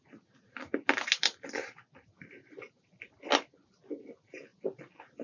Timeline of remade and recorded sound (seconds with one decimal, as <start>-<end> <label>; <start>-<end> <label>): 0.0-5.2 recorded